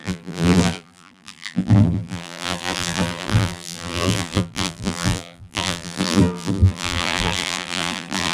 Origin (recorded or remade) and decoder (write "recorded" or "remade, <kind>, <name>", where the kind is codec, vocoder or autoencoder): remade, vocoder, BigVGAN v2